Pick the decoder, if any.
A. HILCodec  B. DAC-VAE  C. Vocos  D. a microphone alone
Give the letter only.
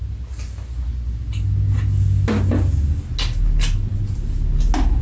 D